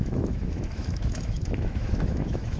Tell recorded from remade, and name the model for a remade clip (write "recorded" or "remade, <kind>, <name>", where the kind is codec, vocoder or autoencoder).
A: remade, autoencoder, DAC-VAE